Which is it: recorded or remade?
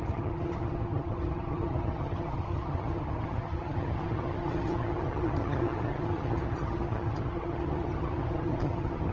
remade